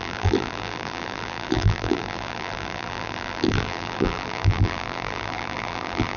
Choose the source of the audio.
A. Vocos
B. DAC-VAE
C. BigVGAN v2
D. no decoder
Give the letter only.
C